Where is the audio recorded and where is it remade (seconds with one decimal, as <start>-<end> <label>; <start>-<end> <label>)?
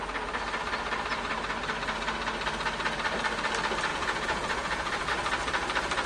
0.0-3.9 recorded; 3.9-5.1 remade; 5.1-6.1 recorded